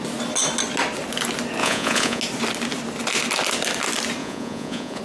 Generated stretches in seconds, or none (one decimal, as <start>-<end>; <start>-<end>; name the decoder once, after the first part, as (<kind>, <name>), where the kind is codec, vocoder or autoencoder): 1.6-2.2 (vocoder, Vocos); 4.2-5.0